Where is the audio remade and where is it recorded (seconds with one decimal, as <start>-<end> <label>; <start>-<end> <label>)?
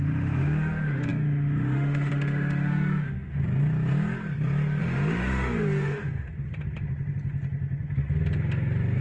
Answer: 0.0-3.4 remade; 3.4-4.8 recorded; 4.8-6.3 remade; 6.3-9.0 recorded